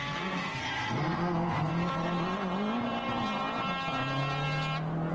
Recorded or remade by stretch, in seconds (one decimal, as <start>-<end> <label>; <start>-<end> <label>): 0.0-1.7 remade; 1.7-5.1 recorded